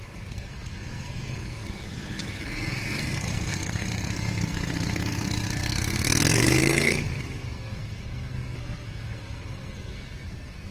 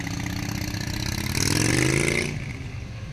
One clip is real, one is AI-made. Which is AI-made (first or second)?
first